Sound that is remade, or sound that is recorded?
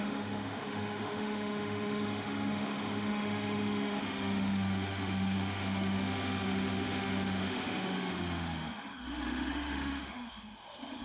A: remade